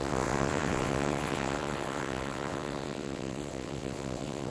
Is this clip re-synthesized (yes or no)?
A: yes